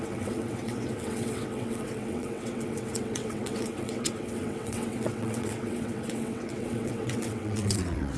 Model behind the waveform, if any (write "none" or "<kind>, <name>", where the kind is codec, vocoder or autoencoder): vocoder, WaveNeXt